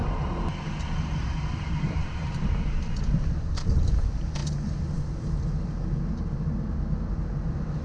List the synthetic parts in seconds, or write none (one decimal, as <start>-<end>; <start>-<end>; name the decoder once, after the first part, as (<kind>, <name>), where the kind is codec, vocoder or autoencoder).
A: 0.0-2.4 (vocoder, BigVGAN v2)